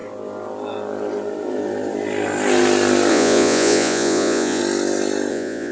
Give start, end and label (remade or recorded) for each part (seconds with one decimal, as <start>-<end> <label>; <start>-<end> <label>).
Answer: 0.0-3.1 recorded; 3.1-4.6 remade; 4.6-5.3 recorded; 5.3-5.7 remade